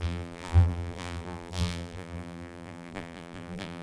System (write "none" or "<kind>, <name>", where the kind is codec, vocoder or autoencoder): vocoder, BigVGAN v2